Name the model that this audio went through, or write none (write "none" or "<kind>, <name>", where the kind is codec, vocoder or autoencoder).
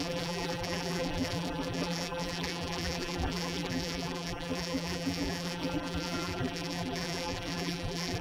vocoder, BigVGAN v2